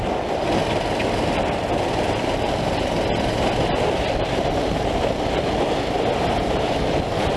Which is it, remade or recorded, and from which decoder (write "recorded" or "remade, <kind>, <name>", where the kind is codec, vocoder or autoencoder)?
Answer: recorded